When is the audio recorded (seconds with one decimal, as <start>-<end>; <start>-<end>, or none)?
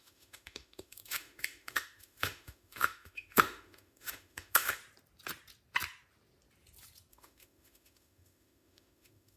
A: 4.8-7.1